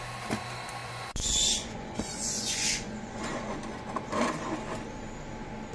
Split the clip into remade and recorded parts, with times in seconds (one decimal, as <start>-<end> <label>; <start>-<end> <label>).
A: 0.0-0.8 recorded; 0.8-3.9 remade; 3.9-5.7 recorded